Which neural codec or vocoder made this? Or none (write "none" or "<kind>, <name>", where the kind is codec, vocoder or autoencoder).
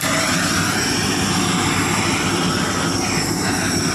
none